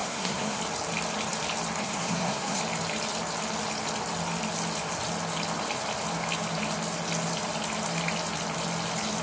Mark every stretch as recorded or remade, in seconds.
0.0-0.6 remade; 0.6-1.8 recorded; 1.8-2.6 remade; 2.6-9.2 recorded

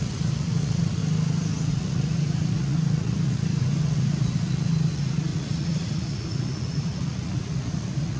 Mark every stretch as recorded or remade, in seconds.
0.0-1.0 remade; 1.0-1.7 recorded; 1.7-8.2 remade

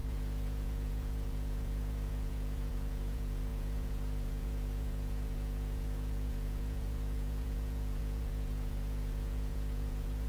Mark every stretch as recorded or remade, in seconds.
0.0-10.3 remade

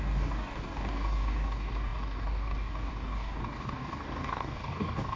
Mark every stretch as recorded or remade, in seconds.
0.0-5.2 remade

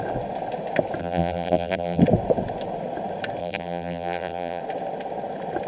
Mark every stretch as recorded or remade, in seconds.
0.0-1.0 recorded; 1.0-2.0 remade; 2.0-3.4 recorded; 3.4-4.6 remade; 4.6-5.7 recorded

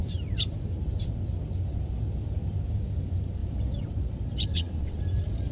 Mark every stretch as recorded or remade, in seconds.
0.0-4.5 recorded; 4.5-5.0 remade; 5.0-5.5 recorded